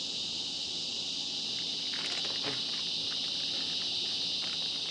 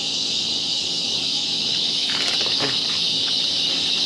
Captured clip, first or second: first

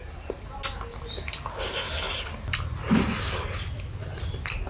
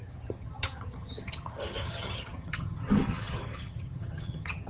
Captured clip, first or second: first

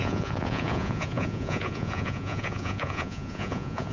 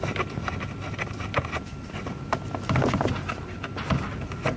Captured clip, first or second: second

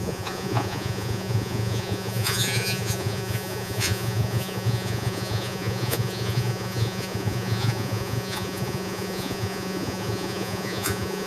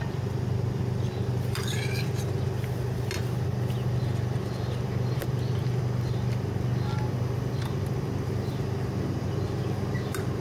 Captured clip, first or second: second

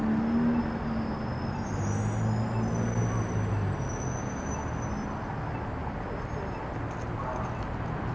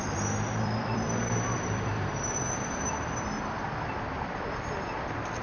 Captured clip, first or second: first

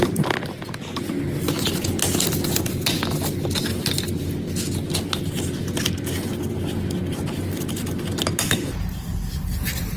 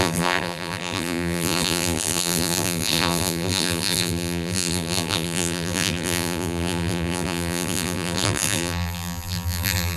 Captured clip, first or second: first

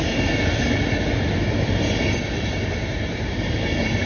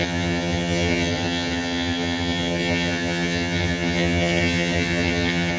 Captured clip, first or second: first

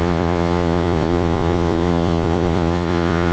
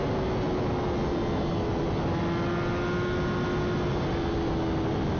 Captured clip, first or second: second